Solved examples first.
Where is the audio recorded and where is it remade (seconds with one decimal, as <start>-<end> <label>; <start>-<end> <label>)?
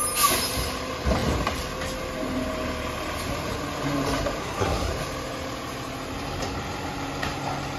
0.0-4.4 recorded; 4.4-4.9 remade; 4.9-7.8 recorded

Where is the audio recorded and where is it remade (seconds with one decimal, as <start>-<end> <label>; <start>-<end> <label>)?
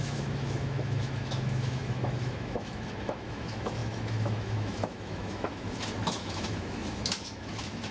0.0-7.9 remade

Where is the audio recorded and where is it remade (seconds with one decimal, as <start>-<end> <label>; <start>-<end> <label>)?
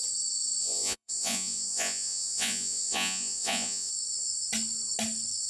0.0-0.6 recorded; 0.6-3.9 remade; 3.9-5.5 recorded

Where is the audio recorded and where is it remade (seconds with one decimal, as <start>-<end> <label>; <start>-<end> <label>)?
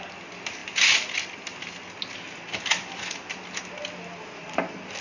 0.0-5.0 recorded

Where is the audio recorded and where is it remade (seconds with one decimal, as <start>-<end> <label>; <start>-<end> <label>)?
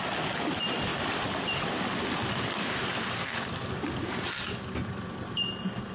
0.0-0.9 recorded; 0.9-3.9 remade; 3.9-5.9 recorded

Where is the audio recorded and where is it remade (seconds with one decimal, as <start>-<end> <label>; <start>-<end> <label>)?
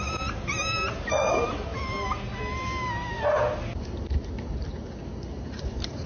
0.0-1.7 remade; 1.7-5.4 recorded; 5.4-6.1 remade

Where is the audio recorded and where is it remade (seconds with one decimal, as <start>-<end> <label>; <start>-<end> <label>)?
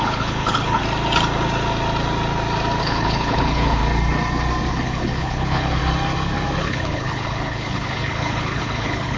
0.0-0.8 remade; 0.8-2.8 recorded; 2.8-3.8 remade; 3.8-4.7 recorded; 4.7-5.8 remade; 5.8-6.6 recorded; 6.6-9.2 remade